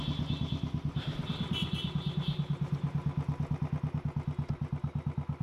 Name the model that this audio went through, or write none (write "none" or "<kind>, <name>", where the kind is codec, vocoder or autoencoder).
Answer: none